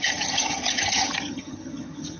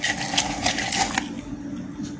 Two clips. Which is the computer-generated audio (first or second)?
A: first